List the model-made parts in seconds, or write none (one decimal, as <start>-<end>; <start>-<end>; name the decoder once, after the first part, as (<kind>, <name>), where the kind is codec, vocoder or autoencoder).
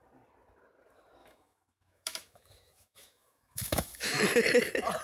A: 1.2-4.2 (autoencoder, DAC-VAE)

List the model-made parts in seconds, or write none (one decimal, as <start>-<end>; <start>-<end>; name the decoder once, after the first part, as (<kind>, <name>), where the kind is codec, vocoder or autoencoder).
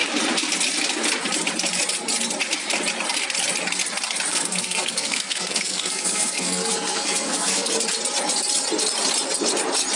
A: 4.3-7.7 (codec, SNAC)